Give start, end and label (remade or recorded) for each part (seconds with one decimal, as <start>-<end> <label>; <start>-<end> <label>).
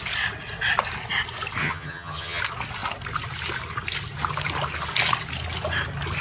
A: 0.0-1.6 recorded; 1.6-2.4 remade; 2.4-6.2 recorded